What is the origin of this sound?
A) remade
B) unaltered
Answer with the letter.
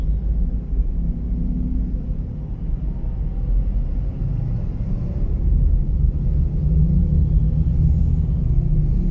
B